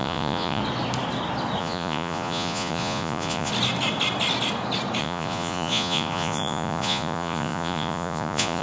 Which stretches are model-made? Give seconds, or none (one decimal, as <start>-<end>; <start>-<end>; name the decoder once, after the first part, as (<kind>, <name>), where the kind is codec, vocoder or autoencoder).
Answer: 0.0-0.6 (vocoder, Vocos); 1.6-3.5; 5.0-8.6